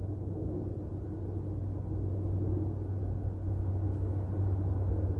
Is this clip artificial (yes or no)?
no